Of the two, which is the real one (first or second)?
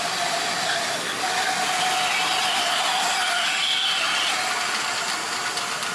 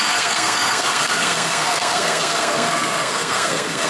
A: first